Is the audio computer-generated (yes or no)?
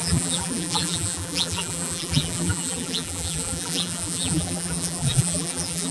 yes